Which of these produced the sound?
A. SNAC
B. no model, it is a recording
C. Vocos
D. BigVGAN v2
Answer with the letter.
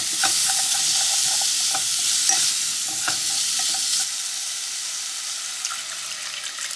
B